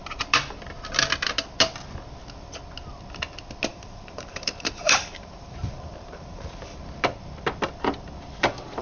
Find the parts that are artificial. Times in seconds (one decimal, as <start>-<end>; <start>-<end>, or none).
3.7-6.8